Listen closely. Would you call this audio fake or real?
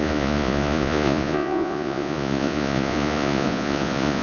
fake